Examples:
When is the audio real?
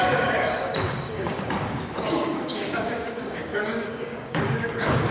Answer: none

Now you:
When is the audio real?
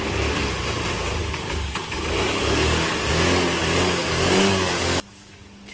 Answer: 0.0-1.2; 3.1-4.0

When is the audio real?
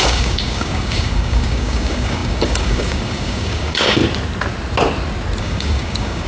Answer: 4.0-5.4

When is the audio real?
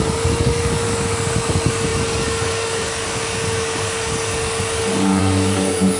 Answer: none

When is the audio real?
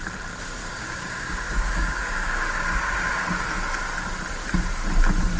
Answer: 0.0-0.6; 3.4-5.4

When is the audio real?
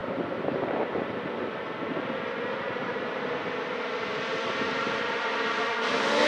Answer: 0.0-6.3